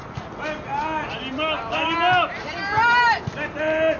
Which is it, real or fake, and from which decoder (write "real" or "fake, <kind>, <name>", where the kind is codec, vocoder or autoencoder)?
real